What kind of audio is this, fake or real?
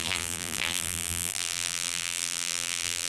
fake